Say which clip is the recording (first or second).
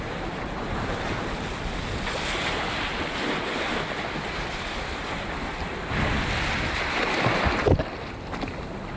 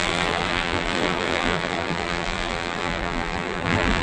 first